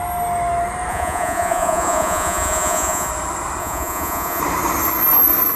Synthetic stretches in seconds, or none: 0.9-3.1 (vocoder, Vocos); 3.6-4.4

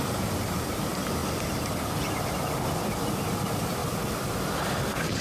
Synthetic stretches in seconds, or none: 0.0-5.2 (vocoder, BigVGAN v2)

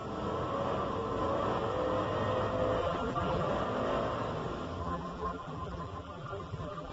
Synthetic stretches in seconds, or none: 2.8-3.5 (vocoder, BigVGAN v2); 4.8-6.9

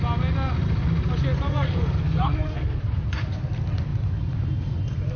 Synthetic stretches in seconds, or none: 1.5-2.8 (codec, SNAC)

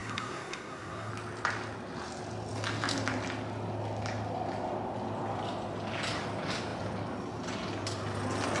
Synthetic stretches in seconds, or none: 0.0-1.1 (codec, SNAC)